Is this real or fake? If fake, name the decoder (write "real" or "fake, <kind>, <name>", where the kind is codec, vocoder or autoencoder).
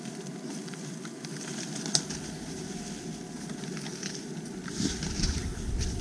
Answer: real